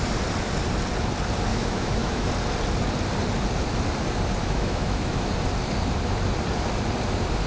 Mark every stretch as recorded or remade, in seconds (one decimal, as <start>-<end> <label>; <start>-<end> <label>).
0.0-1.5 recorded; 1.5-2.3 remade; 2.3-4.4 recorded; 4.4-5.3 remade; 5.3-7.5 recorded